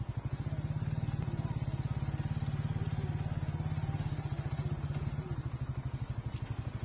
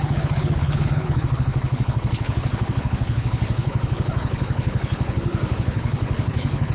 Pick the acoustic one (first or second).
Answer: first